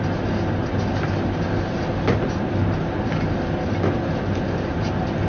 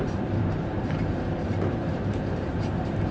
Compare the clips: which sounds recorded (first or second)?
first